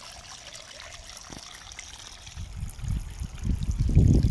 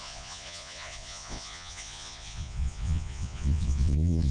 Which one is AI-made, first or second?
second